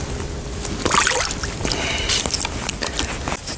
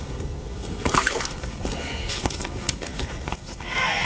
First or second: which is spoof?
second